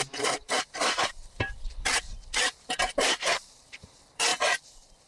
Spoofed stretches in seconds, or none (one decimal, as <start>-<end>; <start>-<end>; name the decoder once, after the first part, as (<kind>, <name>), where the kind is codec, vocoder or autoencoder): 0.0-4.3 (vocoder, BigVGAN v2)